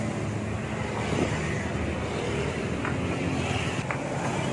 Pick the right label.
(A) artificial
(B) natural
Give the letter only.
B